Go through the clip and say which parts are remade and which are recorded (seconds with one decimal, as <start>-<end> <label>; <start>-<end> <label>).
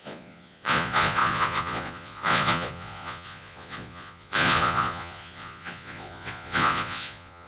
0.0-7.5 remade